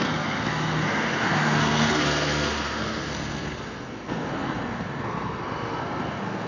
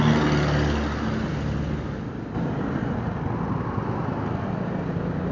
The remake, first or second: first